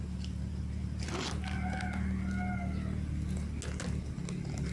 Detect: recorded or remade recorded